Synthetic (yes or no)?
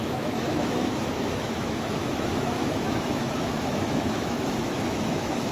yes